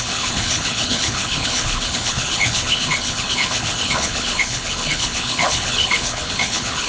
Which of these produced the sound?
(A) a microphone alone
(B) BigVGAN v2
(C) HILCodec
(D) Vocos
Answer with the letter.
C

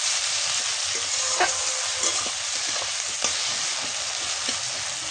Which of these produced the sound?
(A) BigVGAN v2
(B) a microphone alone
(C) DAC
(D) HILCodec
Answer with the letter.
B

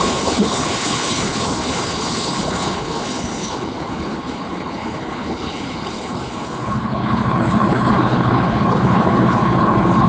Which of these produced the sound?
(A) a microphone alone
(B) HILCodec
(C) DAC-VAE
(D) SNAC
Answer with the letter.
B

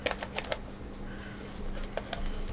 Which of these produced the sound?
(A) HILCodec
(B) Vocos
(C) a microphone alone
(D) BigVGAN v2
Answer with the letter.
C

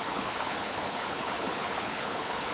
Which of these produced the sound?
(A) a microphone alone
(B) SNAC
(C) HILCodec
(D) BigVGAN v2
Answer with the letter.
C